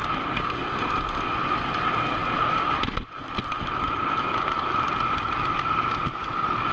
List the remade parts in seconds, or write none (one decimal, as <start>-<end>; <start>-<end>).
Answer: none